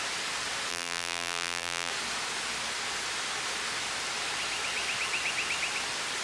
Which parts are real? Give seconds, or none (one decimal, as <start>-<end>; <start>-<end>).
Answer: 0.0-0.7; 1.9-6.2